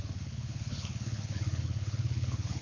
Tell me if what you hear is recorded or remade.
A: remade